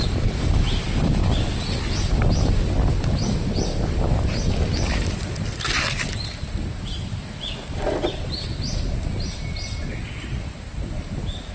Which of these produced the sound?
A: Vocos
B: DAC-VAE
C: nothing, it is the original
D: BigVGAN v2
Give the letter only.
C